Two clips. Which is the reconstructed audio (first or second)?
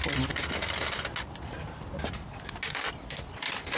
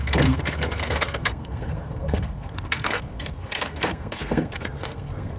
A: second